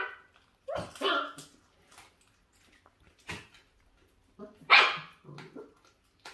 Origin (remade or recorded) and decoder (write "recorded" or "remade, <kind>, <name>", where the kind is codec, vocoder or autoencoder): recorded